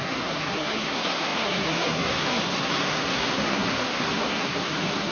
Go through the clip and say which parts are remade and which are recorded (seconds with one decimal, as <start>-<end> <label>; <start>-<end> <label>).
0.0-5.1 remade